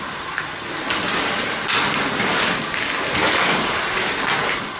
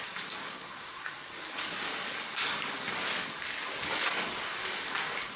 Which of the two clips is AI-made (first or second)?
second